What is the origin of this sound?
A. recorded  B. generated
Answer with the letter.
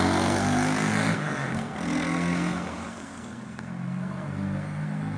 B